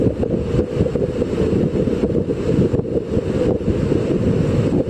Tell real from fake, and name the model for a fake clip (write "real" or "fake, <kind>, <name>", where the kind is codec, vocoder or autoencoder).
real